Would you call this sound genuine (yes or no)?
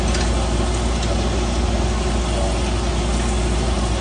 yes